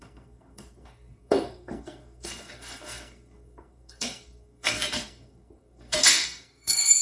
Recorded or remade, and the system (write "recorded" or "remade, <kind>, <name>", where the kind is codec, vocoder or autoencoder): remade, codec, SNAC